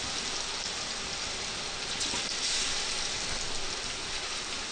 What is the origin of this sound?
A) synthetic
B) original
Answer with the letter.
B